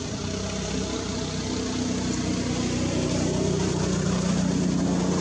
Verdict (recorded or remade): recorded